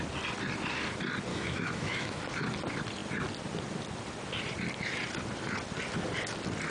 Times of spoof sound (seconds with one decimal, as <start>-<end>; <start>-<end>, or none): 1.3-2.2